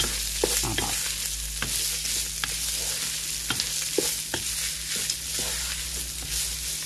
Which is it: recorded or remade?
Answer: recorded